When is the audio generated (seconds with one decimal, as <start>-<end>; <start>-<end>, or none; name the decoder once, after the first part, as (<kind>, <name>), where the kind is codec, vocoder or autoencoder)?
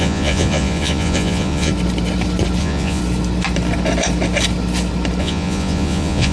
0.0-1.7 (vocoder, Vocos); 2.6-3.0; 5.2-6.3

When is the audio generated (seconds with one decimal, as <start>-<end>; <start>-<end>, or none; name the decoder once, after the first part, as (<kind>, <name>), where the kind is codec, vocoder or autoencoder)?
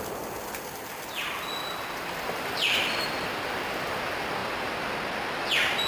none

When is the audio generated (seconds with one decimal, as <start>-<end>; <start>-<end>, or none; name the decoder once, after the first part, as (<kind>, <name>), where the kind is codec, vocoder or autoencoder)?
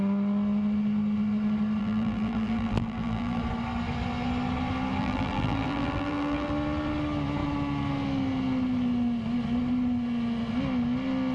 1.8-3.4 (vocoder, BigVGAN v2); 5.0-6.5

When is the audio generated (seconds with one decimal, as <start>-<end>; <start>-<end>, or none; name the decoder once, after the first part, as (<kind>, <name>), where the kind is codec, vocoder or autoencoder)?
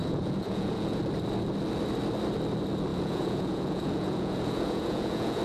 0.0-1.0 (vocoder, Vocos); 2.9-5.4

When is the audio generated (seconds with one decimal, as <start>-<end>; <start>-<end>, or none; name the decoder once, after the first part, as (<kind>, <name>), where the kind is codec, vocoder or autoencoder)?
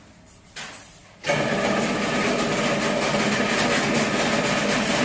none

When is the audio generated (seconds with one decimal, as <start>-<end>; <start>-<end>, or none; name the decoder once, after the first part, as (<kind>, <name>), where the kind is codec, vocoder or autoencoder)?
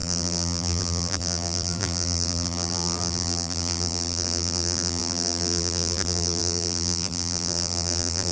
0.0-8.3 (vocoder, BigVGAN v2)